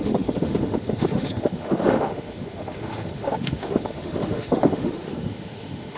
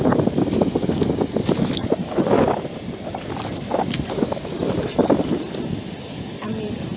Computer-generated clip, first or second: first